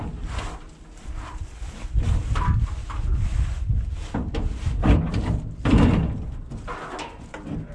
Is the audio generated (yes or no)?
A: no